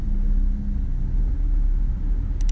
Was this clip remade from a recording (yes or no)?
no